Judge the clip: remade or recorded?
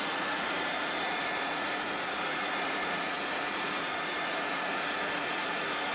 remade